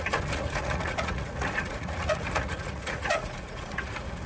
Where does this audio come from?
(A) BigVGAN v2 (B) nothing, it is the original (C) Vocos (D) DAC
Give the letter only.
C